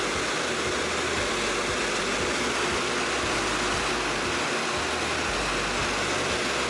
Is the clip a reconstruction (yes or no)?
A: no